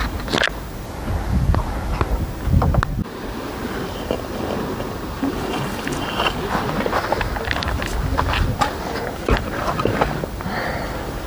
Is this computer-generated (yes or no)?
no